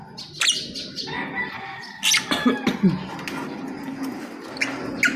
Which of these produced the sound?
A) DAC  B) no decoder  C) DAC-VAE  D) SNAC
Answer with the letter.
B